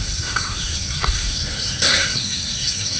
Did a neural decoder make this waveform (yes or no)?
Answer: yes